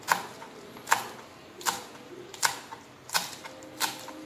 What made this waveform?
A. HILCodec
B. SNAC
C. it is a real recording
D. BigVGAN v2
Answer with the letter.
D